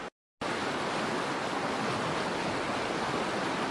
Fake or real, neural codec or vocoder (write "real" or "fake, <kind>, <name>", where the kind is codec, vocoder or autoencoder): real